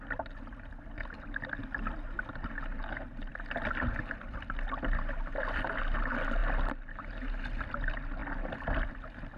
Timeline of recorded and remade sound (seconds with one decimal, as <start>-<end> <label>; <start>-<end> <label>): 0.0-9.4 recorded